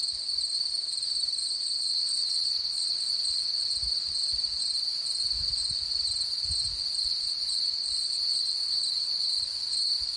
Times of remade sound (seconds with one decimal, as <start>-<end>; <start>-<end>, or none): 1.4-3.7; 7.0-9.3